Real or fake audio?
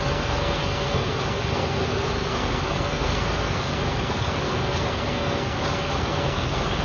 fake